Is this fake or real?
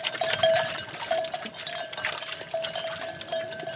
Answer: real